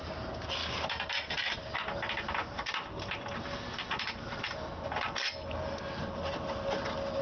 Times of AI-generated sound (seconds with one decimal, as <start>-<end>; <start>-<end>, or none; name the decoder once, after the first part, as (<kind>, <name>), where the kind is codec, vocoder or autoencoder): none